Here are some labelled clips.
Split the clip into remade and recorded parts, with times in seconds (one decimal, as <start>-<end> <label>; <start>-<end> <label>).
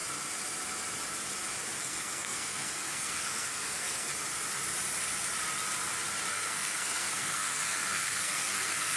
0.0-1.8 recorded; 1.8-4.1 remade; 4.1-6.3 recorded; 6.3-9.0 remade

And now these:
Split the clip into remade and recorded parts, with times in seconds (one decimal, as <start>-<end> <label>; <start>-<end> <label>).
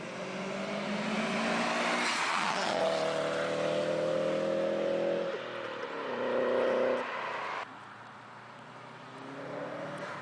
0.0-2.1 recorded; 2.1-2.8 remade; 2.8-10.2 recorded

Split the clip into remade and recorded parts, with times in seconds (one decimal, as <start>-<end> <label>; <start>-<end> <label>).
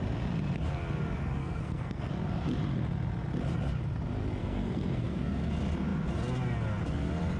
0.0-1.4 recorded; 1.4-2.1 remade; 2.1-4.4 recorded; 4.4-5.5 remade; 5.5-7.4 recorded